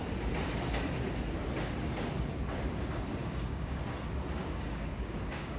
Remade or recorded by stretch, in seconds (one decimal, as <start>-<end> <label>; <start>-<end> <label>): 0.0-3.2 recorded; 3.2-3.8 remade; 3.8-4.4 recorded; 4.4-5.6 remade